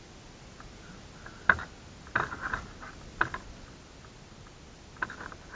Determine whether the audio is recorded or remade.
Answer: recorded